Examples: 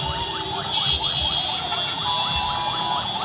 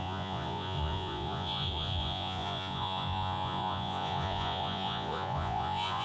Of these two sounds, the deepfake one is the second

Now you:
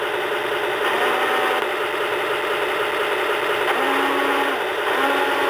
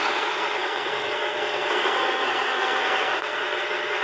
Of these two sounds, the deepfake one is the second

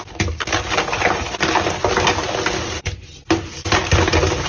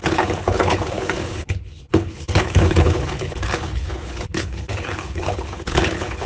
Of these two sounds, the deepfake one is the second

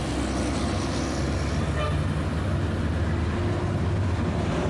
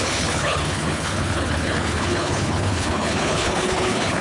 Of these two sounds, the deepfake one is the second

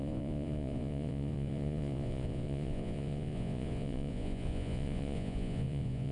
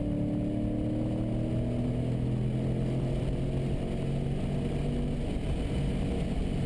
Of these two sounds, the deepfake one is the first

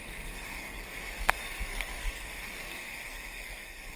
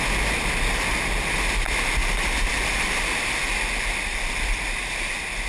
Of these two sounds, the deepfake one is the first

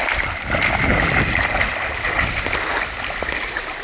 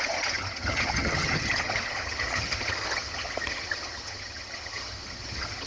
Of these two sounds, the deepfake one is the second